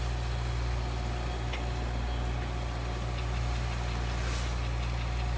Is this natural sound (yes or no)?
yes